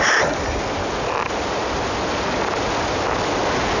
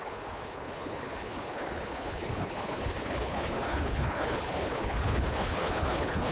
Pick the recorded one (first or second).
first